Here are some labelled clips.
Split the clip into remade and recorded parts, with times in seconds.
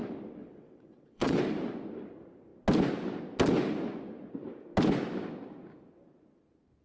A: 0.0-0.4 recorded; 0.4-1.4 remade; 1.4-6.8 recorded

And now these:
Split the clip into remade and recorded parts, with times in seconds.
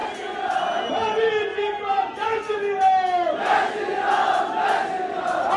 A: 0.0-5.6 recorded